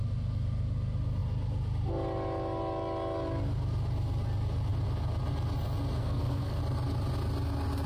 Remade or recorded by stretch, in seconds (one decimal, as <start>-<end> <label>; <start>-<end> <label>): 0.0-6.0 recorded; 6.0-6.6 remade; 6.6-7.9 recorded